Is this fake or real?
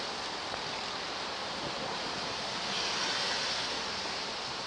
real